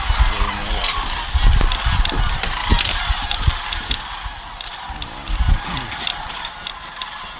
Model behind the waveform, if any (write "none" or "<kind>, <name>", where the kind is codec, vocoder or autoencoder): none